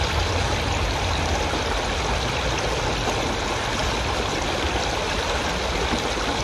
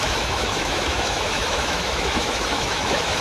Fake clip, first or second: second